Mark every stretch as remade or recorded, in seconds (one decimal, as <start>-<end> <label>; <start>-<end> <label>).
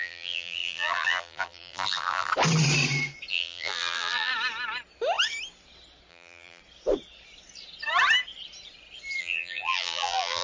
0.0-2.3 remade; 2.3-3.3 recorded; 3.3-4.3 remade; 4.3-6.1 recorded; 6.1-6.6 remade; 6.6-9.2 recorded; 9.2-10.4 remade